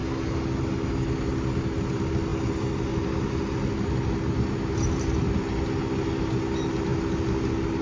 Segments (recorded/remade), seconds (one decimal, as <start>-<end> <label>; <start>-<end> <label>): 0.0-7.8 recorded